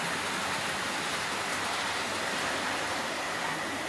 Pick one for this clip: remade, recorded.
recorded